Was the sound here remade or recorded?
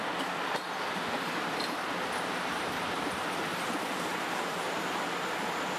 recorded